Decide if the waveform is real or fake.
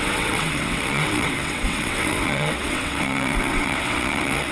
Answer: fake